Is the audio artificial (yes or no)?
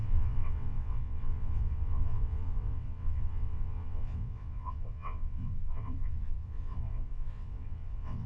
yes